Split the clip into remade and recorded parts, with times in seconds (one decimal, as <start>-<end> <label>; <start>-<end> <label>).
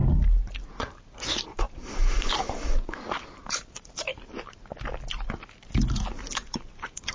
0.0-1.3 recorded; 1.3-4.1 remade; 4.1-6.2 recorded; 6.2-7.1 remade